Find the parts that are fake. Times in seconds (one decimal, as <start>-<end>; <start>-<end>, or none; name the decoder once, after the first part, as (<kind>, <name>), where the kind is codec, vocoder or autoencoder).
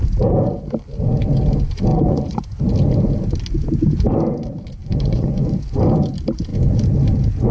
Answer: 1.9-2.6 (vocoder, Vocos); 4.8-5.8